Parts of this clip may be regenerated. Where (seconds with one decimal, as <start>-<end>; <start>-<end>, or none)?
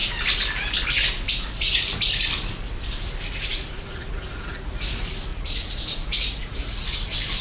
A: 3.5-4.7; 5.3-6.9